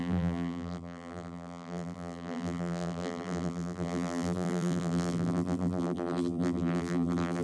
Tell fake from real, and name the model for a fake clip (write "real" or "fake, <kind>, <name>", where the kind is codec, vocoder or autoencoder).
fake, vocoder, BigVGAN v2